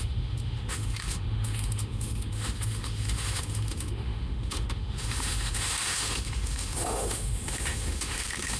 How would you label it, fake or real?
fake